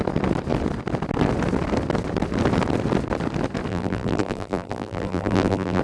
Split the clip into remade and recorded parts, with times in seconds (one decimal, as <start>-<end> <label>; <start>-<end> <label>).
0.0-3.7 recorded; 3.7-5.8 remade